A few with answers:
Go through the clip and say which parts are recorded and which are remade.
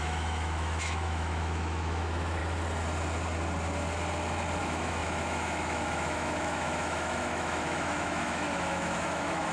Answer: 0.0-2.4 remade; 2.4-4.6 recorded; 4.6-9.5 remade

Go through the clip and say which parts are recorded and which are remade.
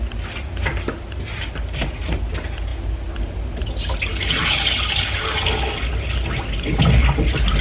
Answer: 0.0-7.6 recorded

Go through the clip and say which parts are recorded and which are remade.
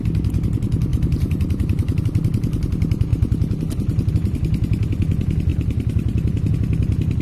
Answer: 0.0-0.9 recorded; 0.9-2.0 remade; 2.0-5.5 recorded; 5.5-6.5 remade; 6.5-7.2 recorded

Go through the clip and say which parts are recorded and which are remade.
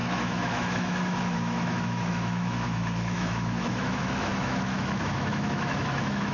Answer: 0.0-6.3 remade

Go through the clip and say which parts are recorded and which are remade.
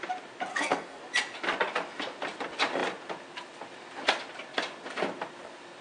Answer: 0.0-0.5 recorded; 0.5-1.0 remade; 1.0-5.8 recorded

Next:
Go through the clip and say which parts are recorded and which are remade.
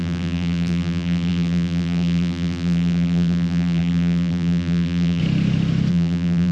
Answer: 0.0-5.2 remade; 5.2-5.9 recorded; 5.9-6.5 remade